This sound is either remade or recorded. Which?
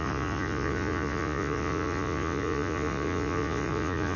remade